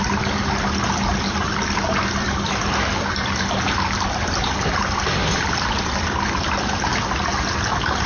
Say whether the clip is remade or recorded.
recorded